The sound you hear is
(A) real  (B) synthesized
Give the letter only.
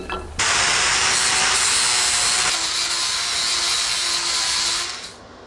A